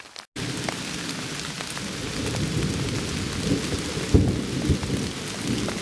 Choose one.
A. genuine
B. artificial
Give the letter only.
A